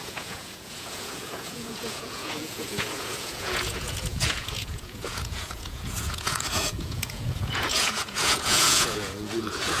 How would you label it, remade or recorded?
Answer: remade